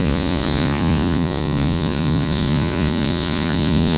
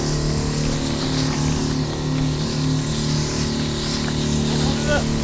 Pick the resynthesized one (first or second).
first